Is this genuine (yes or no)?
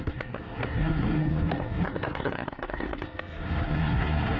no